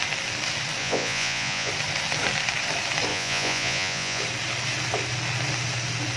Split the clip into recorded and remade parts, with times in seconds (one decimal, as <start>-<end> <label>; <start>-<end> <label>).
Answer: 0.0-0.8 recorded; 0.8-1.7 remade; 1.7-3.1 recorded; 3.1-4.2 remade; 4.2-6.2 recorded